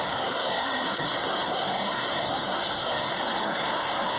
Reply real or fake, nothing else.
fake